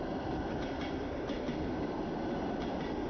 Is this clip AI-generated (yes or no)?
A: no